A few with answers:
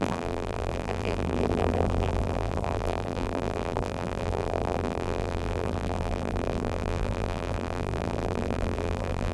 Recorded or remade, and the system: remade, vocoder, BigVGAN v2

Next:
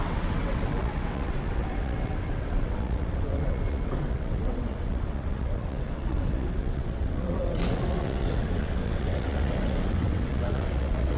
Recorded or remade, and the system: remade, vocoder, WaveNeXt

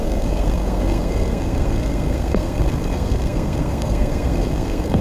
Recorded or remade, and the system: remade, codec, SNAC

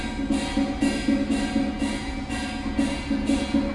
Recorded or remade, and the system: recorded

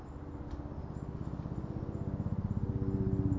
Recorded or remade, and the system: recorded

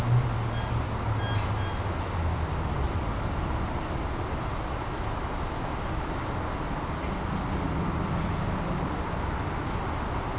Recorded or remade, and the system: recorded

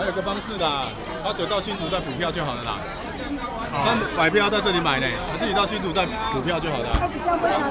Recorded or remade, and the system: recorded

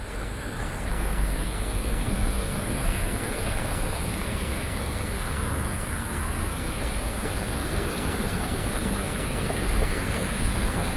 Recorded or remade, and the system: remade, codec, SNAC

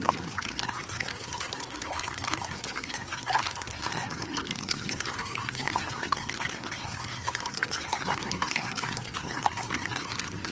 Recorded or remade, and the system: remade, codec, SNAC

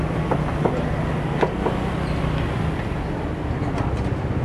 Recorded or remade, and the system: recorded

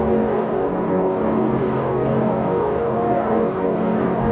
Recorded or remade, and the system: remade, codec, DAC